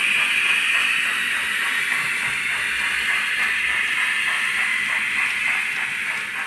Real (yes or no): yes